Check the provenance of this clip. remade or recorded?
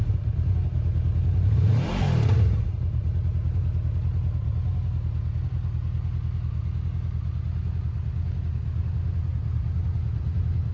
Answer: recorded